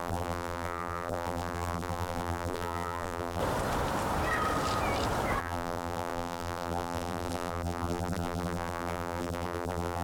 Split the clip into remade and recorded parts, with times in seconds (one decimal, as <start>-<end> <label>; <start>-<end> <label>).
0.0-3.4 remade; 3.4-5.4 recorded; 5.4-10.0 remade